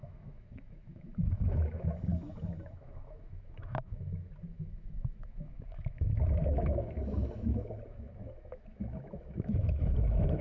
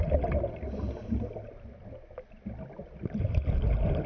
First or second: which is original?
second